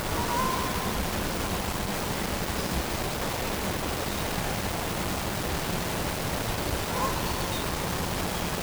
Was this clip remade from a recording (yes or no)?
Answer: no